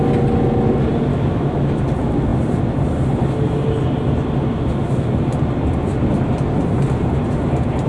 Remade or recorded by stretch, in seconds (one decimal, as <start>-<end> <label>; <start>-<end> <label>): 0.0-1.1 recorded; 1.1-1.8 remade; 1.8-7.9 recorded